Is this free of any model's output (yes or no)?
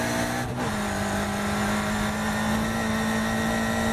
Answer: yes